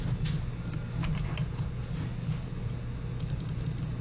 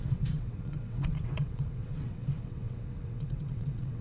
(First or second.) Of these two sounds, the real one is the first